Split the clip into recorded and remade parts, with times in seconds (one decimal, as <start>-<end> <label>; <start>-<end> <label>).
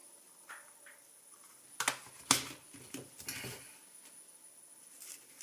0.0-5.4 recorded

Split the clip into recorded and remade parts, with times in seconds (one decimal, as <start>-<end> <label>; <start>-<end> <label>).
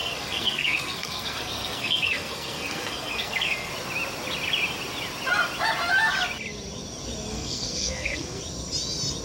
0.0-3.7 remade; 3.7-7.3 recorded; 7.3-8.4 remade; 8.4-9.2 recorded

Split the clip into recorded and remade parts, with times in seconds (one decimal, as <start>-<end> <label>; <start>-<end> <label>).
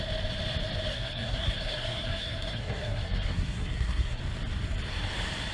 0.0-0.9 recorded; 0.9-4.2 remade; 4.2-5.5 recorded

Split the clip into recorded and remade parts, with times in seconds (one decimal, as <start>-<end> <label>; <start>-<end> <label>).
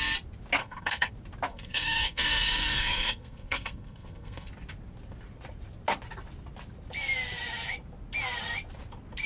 0.0-0.6 recorded; 0.6-1.1 remade; 1.1-1.5 recorded; 1.5-4.5 remade; 4.5-9.3 recorded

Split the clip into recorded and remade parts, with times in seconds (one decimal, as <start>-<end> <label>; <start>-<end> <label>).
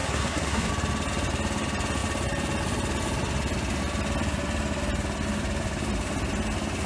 0.0-0.7 remade; 0.7-6.9 recorded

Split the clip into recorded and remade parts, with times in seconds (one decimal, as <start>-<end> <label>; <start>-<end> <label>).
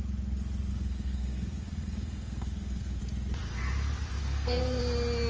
0.0-0.7 recorded; 0.7-3.0 remade; 3.0-4.2 recorded; 4.2-4.8 remade; 4.8-5.3 recorded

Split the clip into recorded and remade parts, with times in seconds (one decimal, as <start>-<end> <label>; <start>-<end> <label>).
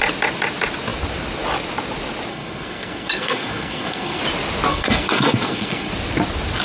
0.0-2.3 recorded; 2.3-4.2 remade; 4.2-4.7 recorded; 4.7-5.9 remade; 5.9-6.6 recorded